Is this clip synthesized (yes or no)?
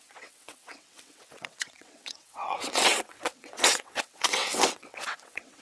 yes